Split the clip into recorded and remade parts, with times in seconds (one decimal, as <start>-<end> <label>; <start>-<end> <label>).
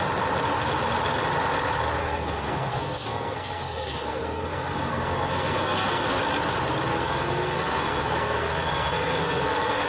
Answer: 0.0-2.0 recorded; 2.0-6.1 remade; 6.1-6.9 recorded; 6.9-9.9 remade